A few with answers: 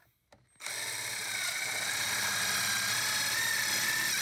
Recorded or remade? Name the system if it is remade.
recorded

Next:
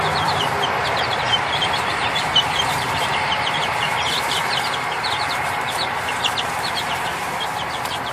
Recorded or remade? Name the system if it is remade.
remade, vocoder, BigVGAN v2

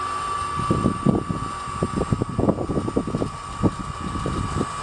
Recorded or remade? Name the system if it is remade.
recorded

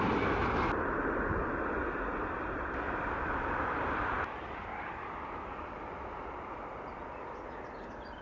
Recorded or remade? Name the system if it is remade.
remade, vocoder, BigVGAN v2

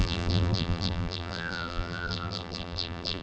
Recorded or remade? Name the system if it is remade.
remade, vocoder, BigVGAN v2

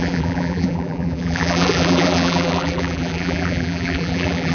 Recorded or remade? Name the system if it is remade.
remade, vocoder, BigVGAN v2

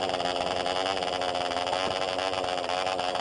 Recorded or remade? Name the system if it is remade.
recorded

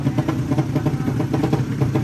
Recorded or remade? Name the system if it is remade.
recorded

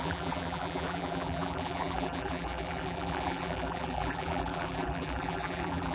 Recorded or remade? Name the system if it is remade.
remade, vocoder, BigVGAN v2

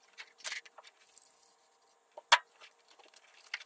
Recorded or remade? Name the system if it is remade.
recorded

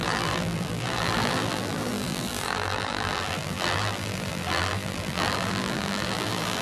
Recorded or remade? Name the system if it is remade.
remade, vocoder, BigVGAN v2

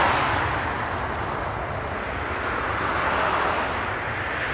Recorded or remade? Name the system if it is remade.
recorded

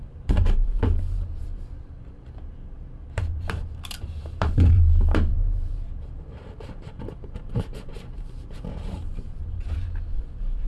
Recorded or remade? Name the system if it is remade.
remade, vocoder, BigVGAN v2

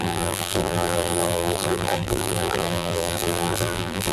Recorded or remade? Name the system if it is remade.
remade, vocoder, BigVGAN v2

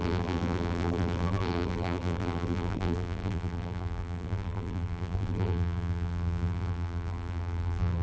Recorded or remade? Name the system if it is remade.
remade, vocoder, BigVGAN v2